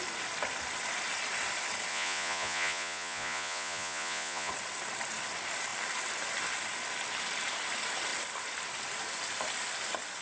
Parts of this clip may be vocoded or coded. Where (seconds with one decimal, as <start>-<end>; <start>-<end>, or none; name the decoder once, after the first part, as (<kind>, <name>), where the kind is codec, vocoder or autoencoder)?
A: 1.9-4.5 (vocoder, Vocos)